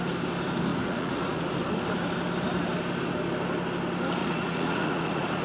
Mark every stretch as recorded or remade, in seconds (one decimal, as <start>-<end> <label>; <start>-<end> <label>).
0.0-0.7 recorded; 0.7-1.5 remade; 1.5-4.2 recorded; 4.2-5.4 remade